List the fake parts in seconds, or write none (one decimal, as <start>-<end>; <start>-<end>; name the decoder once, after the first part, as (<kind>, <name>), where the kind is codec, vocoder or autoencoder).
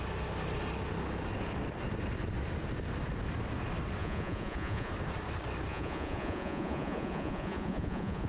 4.0-4.9 (vocoder, Vocos); 5.7-8.3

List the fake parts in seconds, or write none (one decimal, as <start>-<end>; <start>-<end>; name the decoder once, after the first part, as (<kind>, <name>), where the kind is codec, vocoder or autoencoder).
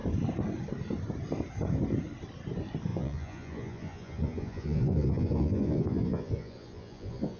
2.9-7.4 (vocoder, Vocos)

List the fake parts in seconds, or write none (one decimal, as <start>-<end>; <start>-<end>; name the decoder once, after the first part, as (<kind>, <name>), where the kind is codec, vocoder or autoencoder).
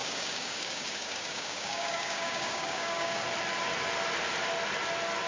0.0-3.2 (codec, DAC)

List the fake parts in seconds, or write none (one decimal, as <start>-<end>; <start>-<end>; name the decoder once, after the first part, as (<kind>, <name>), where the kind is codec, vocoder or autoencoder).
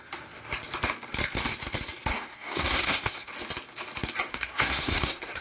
2.1-3.3 (codec, SNAC); 4.3-5.4